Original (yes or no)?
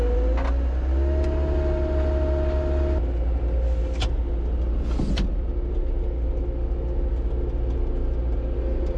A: yes